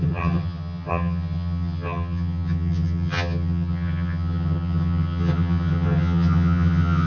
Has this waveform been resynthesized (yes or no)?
yes